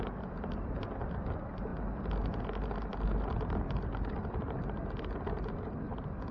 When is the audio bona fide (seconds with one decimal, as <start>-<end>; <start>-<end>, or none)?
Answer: 0.0-6.3